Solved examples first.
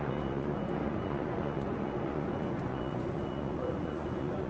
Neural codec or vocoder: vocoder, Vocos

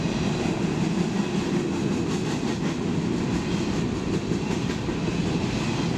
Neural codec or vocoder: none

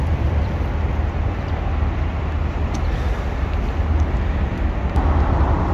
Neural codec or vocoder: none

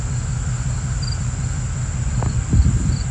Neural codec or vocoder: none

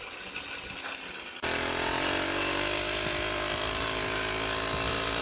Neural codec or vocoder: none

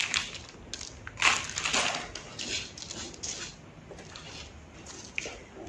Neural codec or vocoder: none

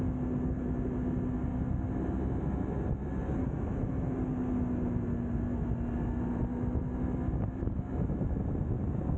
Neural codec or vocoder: none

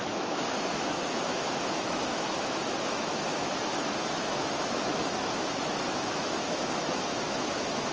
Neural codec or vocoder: autoencoder, DAC-VAE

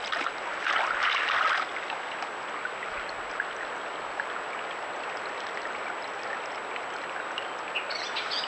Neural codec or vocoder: none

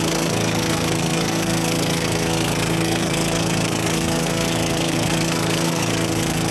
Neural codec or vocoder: codec, SNAC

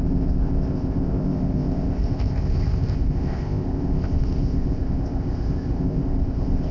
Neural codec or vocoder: codec, ZipCodec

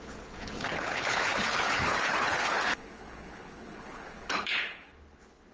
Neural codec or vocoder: codec, HILCodec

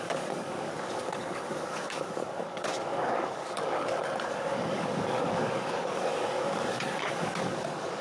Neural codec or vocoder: codec, DAC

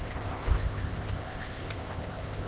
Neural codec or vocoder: codec, ZipCodec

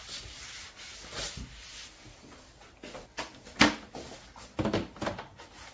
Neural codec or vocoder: none